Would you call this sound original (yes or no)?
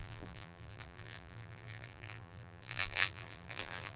no